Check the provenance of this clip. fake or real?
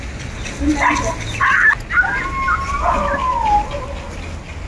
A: real